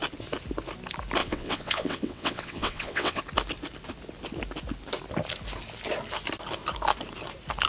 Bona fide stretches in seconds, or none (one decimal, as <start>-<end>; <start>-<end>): 0.0-1.2; 3.2-7.7